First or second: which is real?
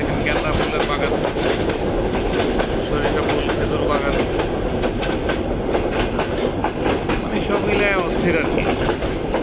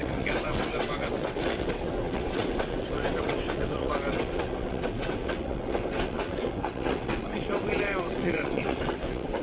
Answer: first